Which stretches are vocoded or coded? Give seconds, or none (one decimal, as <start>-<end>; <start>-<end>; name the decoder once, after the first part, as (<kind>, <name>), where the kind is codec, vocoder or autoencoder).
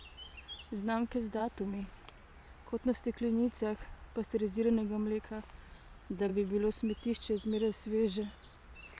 1.4-2.3 (vocoder, Vocos); 5.6-6.3